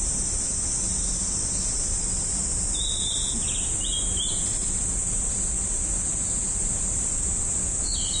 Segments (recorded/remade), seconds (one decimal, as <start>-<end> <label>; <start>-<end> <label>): 0.0-1.2 recorded; 1.2-2.4 remade; 2.4-6.6 recorded; 6.6-7.4 remade; 7.4-8.2 recorded